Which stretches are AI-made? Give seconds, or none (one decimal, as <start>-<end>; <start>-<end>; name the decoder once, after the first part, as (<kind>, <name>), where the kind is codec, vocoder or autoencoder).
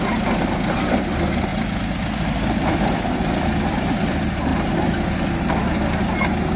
none